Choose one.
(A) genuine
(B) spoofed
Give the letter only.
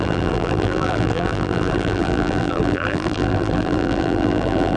B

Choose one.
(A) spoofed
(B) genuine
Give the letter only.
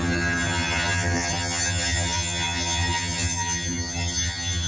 A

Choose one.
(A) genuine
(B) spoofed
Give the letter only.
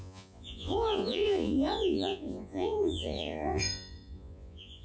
B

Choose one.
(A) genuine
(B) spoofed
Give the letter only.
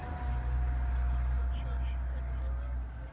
A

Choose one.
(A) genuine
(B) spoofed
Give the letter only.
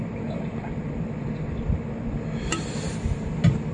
A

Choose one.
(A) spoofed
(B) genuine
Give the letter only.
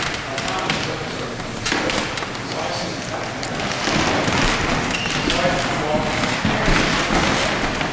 B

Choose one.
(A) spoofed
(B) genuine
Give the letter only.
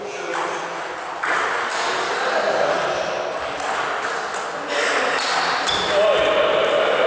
B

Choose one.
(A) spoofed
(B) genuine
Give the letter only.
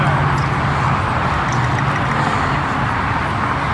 B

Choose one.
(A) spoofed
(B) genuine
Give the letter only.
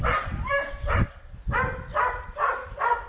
B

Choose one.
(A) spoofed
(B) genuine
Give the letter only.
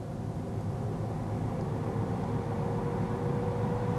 B